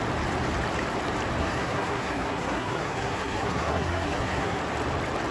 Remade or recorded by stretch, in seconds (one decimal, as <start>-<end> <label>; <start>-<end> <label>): 0.0-1.4 recorded; 1.4-4.6 remade; 4.6-5.3 recorded